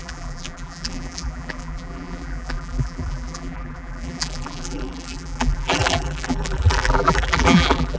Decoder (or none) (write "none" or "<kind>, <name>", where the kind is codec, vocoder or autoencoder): vocoder, BigVGAN v2